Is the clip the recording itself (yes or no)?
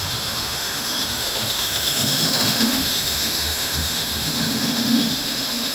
no